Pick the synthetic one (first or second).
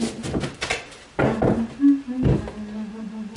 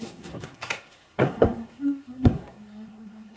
second